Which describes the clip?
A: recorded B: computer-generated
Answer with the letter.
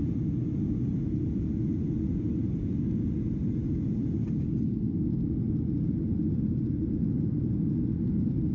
A